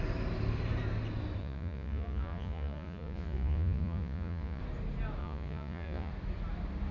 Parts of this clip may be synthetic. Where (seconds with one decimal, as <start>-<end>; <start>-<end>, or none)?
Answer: 1.4-4.6; 5.2-6.1